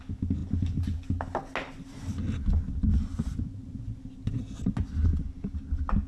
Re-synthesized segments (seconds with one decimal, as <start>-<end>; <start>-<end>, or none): none